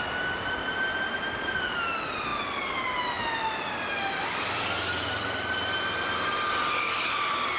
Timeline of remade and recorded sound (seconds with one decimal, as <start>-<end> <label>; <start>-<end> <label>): 0.0-7.6 recorded